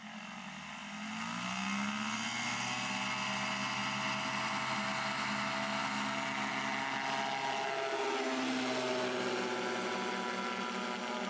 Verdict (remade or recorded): recorded